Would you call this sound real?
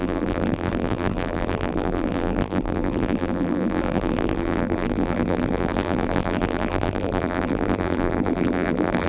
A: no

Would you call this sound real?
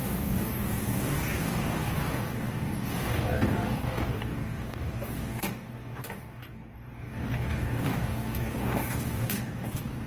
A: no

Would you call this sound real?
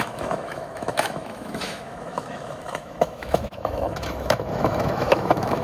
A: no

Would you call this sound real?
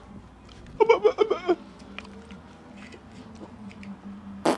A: yes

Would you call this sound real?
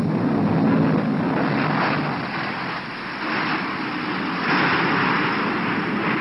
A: yes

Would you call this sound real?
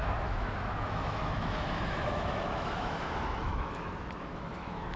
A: no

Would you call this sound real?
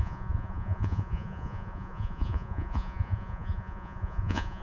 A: no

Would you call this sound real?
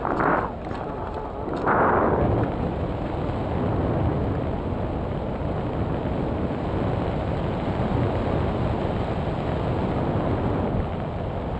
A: yes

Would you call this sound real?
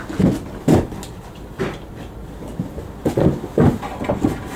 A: yes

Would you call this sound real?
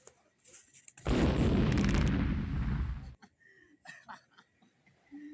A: yes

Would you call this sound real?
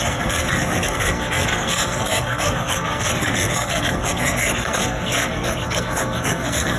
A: no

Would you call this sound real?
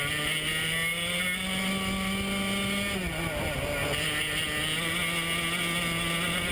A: yes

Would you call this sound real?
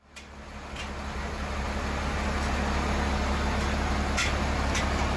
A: yes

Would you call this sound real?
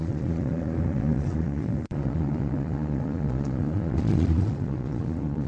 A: no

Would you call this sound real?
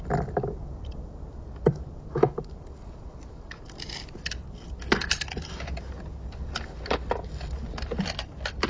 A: yes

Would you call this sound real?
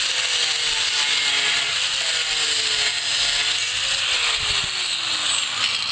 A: yes